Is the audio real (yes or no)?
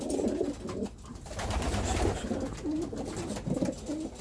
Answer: yes